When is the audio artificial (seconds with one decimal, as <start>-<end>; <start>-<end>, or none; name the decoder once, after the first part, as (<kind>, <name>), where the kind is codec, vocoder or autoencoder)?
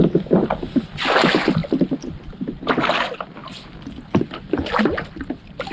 none